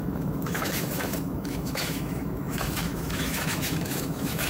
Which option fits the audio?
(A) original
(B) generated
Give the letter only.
B